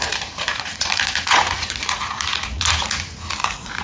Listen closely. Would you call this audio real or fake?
fake